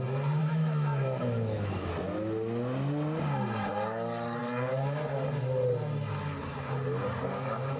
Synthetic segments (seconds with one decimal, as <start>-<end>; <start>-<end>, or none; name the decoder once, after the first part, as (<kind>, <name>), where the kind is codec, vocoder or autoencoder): 0.4-1.9 (autoencoder, DAC-VAE)